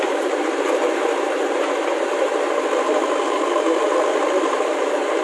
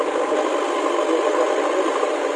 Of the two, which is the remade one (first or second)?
first